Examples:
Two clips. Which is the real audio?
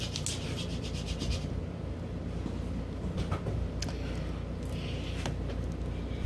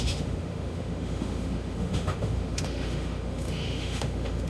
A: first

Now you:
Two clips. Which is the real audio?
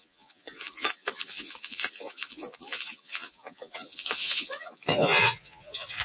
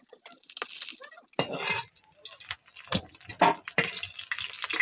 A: second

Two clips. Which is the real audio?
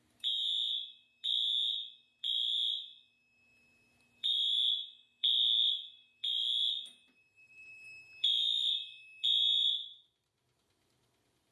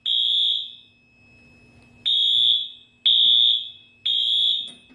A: second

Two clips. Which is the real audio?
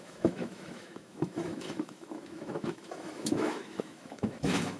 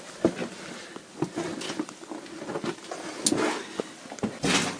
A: second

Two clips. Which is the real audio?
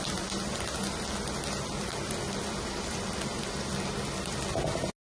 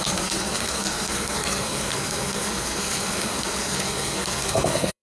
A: first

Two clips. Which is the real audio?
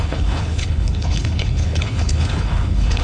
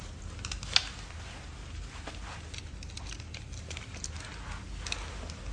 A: second